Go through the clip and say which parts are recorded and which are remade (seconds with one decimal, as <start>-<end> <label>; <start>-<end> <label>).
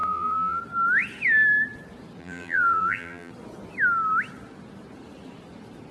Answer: 0.0-0.6 remade; 0.6-2.2 recorded; 2.2-3.3 remade; 3.3-5.9 recorded